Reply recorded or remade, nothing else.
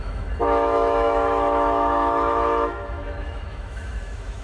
remade